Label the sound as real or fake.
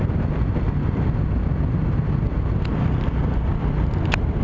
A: real